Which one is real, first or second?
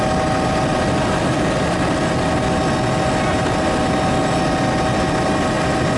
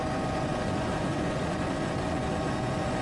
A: first